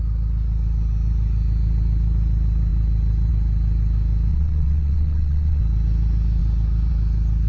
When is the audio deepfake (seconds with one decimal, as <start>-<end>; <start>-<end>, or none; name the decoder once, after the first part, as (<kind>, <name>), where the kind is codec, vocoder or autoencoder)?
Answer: 4.3-5.6 (vocoder, WaveNeXt)